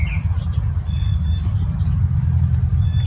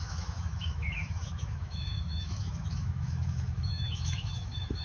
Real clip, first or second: first